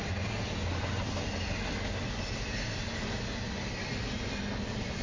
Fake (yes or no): no